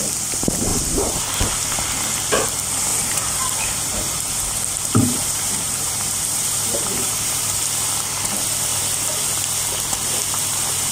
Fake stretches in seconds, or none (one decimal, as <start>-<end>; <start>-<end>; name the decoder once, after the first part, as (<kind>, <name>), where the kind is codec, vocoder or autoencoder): 0.7-1.3 (vocoder, BigVGAN v2); 2.9-7.6